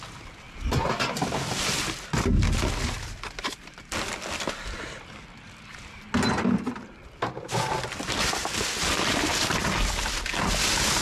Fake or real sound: real